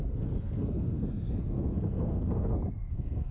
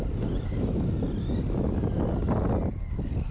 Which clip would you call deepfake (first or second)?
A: first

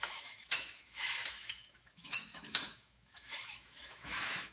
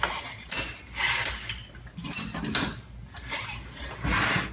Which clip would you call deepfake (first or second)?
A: first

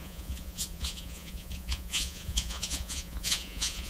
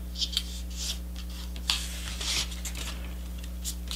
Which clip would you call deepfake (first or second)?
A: first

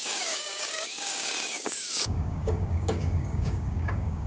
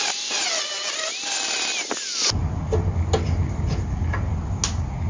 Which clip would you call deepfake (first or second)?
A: first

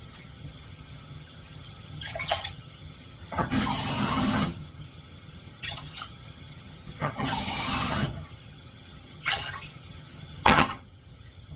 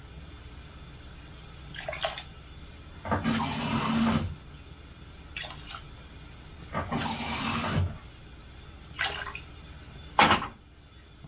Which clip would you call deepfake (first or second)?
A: first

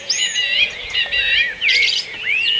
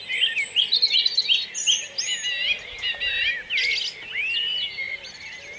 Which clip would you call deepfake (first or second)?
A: first